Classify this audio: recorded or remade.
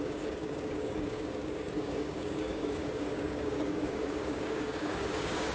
remade